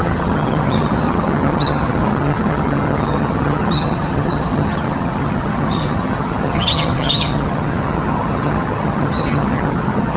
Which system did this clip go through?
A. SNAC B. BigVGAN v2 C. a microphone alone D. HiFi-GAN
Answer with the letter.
D